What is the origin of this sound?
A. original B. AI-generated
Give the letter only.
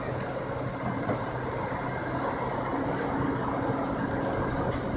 A